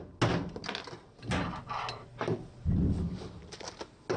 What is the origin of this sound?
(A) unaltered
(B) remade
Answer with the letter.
A